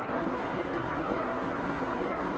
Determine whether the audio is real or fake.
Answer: fake